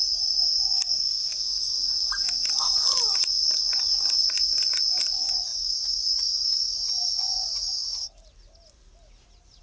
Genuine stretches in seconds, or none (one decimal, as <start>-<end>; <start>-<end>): 0.0-1.2; 1.7-9.6